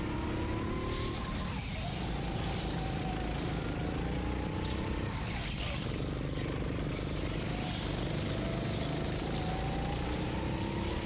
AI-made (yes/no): no